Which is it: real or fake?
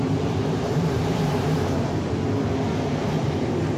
fake